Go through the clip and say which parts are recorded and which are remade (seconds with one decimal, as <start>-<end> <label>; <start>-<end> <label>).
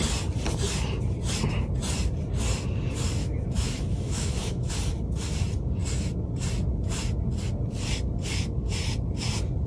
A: 0.0-3.2 recorded; 3.2-4.7 remade; 4.7-9.7 recorded